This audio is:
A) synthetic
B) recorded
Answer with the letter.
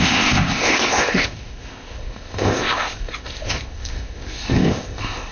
A